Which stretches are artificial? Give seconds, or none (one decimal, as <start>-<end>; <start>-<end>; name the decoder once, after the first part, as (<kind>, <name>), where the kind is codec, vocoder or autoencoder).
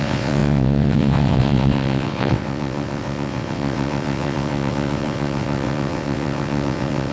0.0-7.1 (vocoder, WaveNeXt)